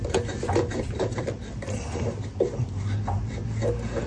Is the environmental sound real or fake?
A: real